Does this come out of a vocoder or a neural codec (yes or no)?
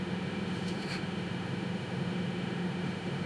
yes